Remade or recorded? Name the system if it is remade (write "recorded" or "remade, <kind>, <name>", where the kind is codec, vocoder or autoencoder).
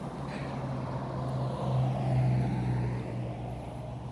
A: recorded